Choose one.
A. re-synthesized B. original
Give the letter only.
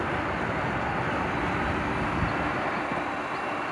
B